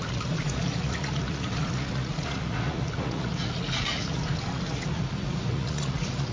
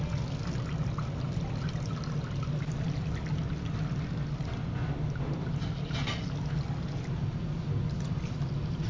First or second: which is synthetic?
first